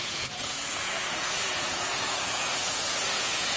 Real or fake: fake